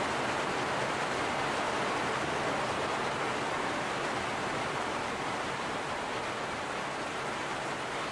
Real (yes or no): yes